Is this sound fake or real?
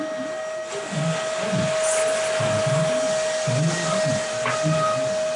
real